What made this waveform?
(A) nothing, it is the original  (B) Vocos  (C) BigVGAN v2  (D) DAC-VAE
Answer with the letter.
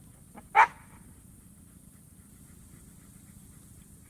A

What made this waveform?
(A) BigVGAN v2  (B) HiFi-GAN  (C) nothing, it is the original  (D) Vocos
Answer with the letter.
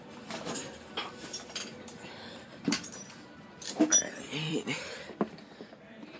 A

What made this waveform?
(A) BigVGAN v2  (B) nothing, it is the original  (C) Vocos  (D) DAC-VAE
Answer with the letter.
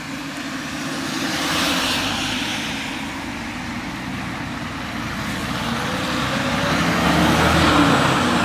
B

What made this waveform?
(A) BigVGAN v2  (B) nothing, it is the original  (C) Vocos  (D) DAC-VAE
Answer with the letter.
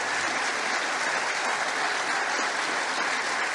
B